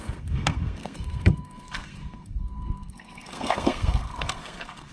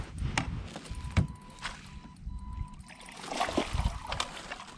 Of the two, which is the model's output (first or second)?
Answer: first